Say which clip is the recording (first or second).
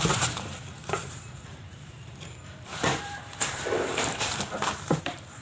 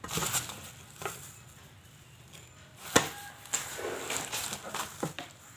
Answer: second